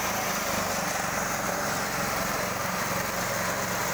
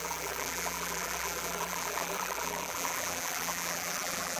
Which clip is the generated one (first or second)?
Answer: second